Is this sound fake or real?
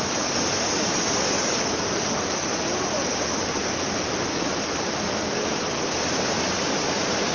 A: real